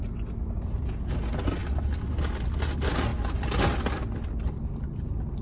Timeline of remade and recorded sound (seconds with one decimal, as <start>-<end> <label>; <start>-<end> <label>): 0.0-5.4 recorded